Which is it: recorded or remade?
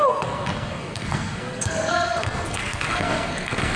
remade